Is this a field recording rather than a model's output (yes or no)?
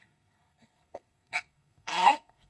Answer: no